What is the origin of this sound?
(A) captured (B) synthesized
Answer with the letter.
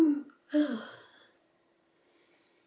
B